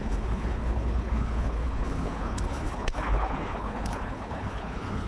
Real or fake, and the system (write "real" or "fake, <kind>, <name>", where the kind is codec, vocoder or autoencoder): fake, codec, HILCodec